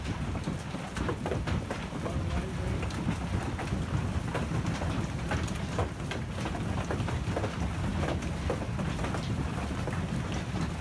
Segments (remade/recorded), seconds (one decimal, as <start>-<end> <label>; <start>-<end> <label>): 0.0-10.8 recorded